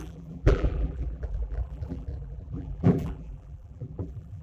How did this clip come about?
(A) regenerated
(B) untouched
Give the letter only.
A